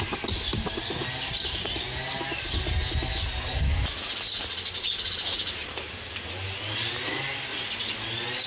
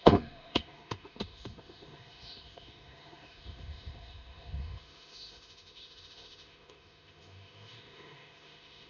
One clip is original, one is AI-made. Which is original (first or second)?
first